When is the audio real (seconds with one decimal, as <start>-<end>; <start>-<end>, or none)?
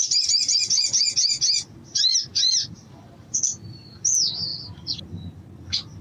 0.0-2.3; 3.9-4.5; 5.0-6.0